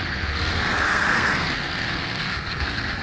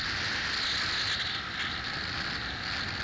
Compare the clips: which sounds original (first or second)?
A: second